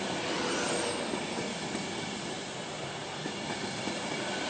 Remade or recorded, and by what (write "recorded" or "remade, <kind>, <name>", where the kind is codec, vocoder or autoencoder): recorded